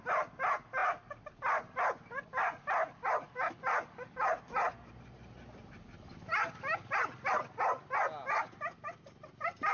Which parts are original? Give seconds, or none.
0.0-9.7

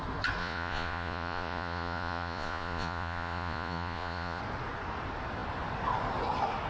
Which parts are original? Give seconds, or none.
0.0-0.4; 4.4-6.7

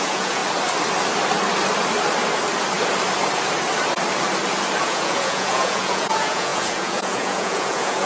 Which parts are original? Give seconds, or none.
0.4-4.8